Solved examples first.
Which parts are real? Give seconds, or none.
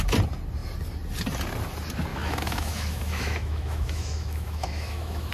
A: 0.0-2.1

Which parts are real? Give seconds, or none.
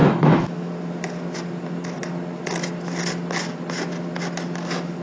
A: 0.7-5.0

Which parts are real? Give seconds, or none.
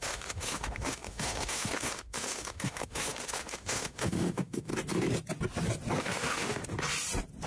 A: 4.7-6.0; 6.6-7.5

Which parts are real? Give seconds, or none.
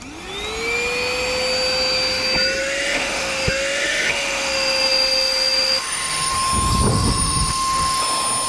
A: 0.0-2.6; 6.3-6.9; 8.0-8.5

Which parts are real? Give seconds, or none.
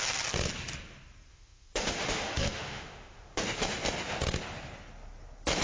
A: 0.0-1.3; 3.4-5.6